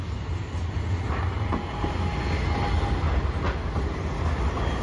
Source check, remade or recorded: recorded